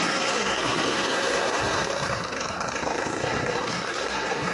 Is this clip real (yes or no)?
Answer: no